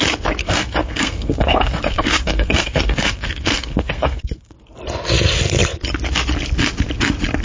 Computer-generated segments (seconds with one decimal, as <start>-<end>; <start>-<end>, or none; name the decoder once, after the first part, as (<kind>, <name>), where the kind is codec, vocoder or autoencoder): 0.4-4.7 (codec, SNAC)